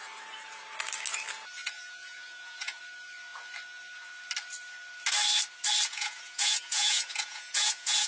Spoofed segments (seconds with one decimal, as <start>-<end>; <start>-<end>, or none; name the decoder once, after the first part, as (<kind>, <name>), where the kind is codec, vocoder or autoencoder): 1.6-2.8 (vocoder, Vocos); 5.9-8.1